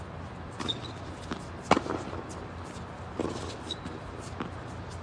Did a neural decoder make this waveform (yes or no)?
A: no